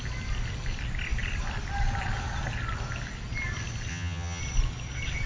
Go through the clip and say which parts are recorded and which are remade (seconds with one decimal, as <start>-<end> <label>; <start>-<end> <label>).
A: 0.0-3.9 recorded; 3.9-4.4 remade; 4.4-5.3 recorded